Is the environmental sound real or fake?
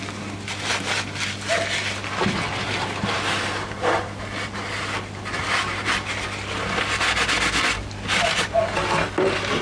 real